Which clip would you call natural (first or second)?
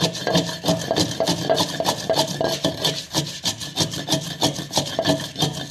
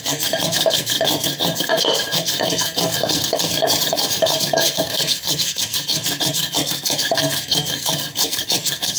first